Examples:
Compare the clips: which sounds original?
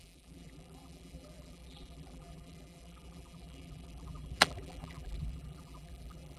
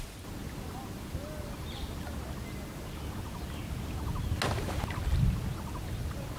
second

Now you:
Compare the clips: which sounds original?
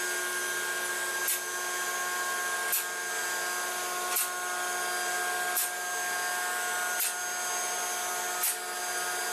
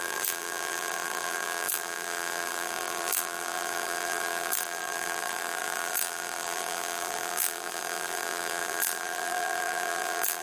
first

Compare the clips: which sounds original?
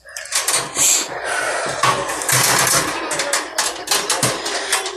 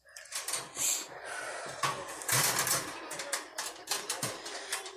first